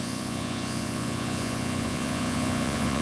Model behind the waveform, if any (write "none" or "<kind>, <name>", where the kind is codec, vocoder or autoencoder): vocoder, Vocos